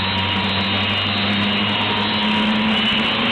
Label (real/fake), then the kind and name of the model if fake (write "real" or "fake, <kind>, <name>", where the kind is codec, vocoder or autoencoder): real